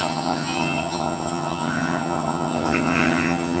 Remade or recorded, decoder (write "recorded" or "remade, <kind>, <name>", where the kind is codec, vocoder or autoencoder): remade, vocoder, HiFi-GAN